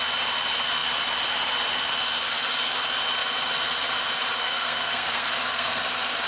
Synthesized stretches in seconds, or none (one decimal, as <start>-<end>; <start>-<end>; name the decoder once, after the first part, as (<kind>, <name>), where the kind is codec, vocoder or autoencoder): 4.4-5.8 (codec, SNAC)